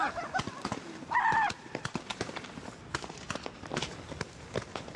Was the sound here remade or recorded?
recorded